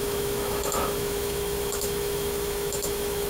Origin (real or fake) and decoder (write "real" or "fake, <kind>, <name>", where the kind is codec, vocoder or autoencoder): fake, autoencoder, DAC-VAE